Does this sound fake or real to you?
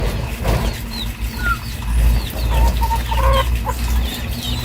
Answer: real